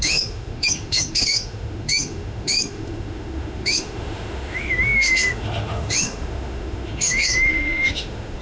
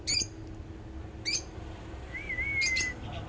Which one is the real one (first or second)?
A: second